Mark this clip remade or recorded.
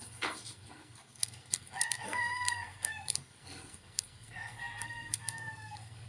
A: remade